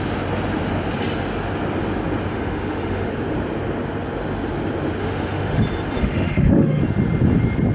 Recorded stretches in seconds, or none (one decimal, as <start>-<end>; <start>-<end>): 0.0-2.3; 3.1-5.0; 5.6-6.0; 6.8-7.7